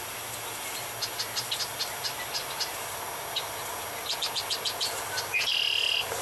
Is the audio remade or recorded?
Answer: recorded